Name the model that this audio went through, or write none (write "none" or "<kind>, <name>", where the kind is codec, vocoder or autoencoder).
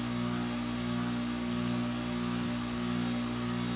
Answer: none